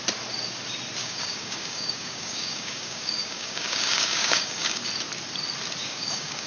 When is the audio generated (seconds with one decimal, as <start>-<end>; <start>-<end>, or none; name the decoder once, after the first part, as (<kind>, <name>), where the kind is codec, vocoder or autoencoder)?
1.0-4.9 (codec, DAC); 5.8-6.5